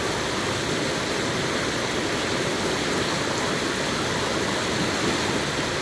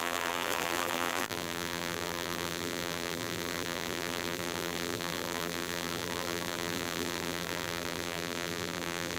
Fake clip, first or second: second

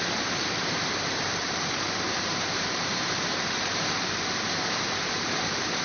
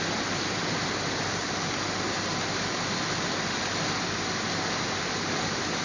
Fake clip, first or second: first